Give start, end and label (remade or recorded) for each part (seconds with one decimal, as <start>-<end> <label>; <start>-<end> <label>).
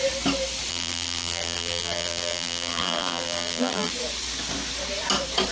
0.0-0.7 recorded; 0.7-3.9 remade; 3.9-5.5 recorded